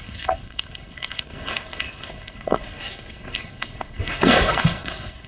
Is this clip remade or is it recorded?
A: remade